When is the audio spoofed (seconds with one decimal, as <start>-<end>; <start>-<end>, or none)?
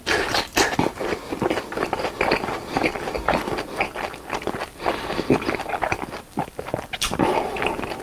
none